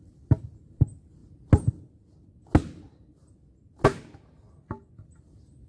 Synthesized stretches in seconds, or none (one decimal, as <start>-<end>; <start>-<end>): none